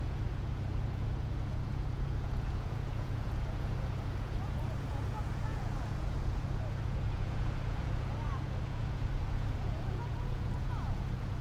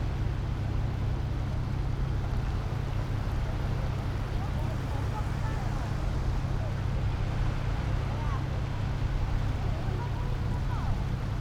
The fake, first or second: first